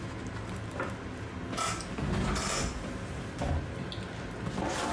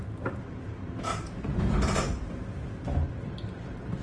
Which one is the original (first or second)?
first